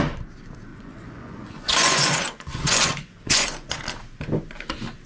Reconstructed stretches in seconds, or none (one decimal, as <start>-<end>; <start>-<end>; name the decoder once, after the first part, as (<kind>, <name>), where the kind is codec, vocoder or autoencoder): 0.7-3.8 (vocoder, Vocos)